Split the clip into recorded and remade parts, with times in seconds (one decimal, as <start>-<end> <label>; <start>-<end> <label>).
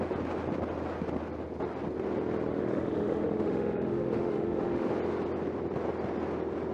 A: 0.0-2.5 recorded; 2.5-4.9 remade; 4.9-6.7 recorded